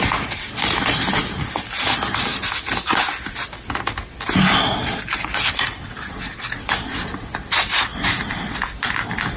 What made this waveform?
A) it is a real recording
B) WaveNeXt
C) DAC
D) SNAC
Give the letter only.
A